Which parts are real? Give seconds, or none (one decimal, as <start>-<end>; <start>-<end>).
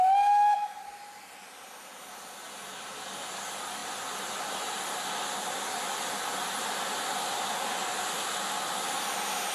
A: 0.0-9.5